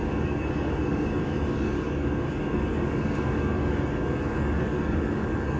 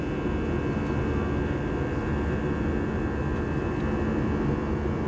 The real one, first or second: second